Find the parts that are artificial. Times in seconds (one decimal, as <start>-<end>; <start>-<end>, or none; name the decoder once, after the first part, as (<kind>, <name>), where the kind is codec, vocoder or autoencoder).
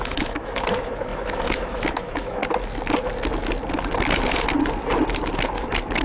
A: 0.0-2.4 (autoencoder, DAC-VAE)